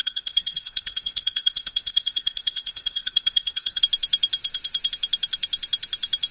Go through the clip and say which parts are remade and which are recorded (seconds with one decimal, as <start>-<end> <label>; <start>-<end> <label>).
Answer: 0.0-3.8 remade; 3.8-6.3 recorded